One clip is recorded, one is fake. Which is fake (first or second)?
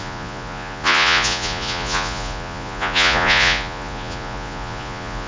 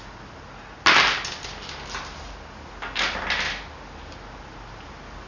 first